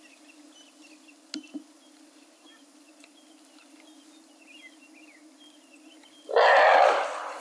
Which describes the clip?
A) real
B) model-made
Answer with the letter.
A